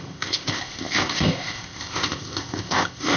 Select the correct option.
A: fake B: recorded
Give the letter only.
A